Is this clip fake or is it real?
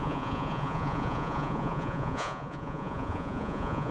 fake